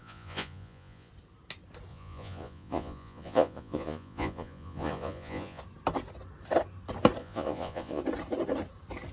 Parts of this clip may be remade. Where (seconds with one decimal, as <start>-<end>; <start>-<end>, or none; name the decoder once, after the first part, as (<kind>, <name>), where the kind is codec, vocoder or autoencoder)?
0.0-1.1 (vocoder, Vocos); 1.9-5.6; 7.2-8.0